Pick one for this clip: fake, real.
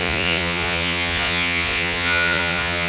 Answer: fake